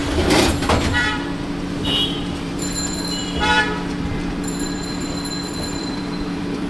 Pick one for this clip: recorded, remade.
remade